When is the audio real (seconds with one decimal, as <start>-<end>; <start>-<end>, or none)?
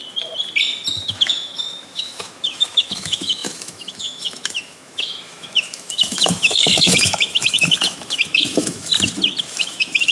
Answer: 0.0-1.0; 8.9-9.4